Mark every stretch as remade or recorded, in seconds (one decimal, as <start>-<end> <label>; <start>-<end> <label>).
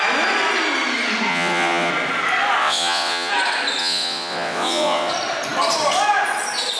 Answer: 0.0-1.3 recorded; 1.3-1.9 remade; 1.9-2.6 recorded; 2.6-3.3 remade; 3.3-3.8 recorded; 3.8-5.1 remade; 5.1-6.8 recorded